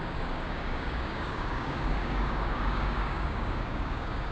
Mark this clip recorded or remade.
remade